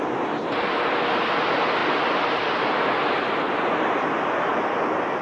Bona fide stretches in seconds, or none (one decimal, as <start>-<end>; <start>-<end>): 0.0-5.2